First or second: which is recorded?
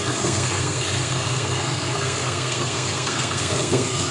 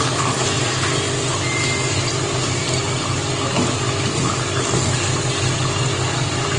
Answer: second